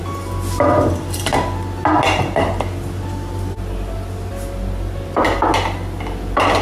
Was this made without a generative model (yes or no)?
yes